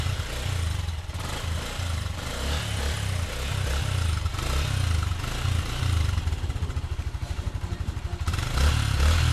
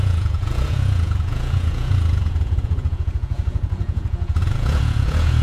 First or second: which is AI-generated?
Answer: second